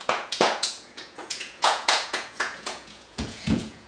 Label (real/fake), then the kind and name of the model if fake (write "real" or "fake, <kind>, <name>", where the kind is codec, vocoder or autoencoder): fake, vocoder, Vocos